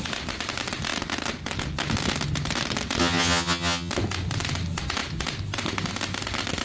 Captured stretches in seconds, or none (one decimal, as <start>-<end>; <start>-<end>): 0.0-3.0; 3.9-6.6